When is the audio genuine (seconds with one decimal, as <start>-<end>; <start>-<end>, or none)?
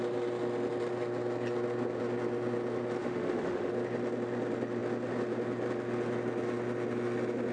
0.0-3.0; 3.7-7.5